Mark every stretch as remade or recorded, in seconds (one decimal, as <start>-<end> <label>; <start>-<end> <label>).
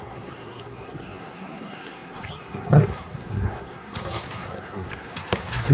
0.0-5.7 remade